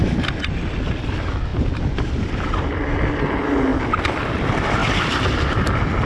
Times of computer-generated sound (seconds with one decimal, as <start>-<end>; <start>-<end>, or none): none